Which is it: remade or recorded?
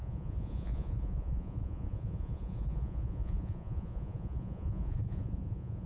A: remade